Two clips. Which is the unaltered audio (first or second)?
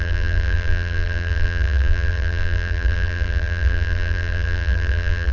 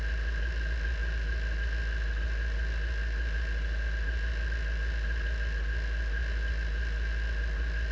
second